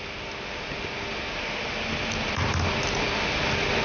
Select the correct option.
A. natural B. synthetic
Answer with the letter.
A